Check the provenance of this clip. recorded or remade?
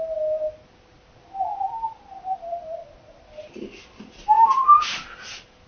recorded